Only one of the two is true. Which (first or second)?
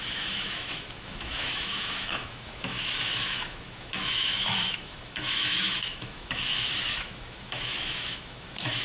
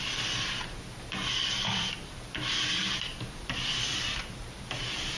second